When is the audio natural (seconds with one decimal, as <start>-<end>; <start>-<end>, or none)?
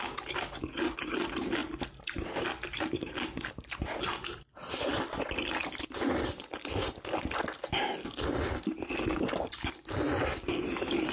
0.0-11.1